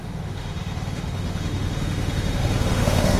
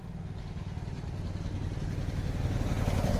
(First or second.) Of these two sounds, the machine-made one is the first